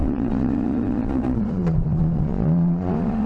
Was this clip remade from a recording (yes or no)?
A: yes